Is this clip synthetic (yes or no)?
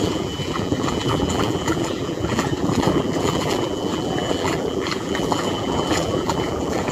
yes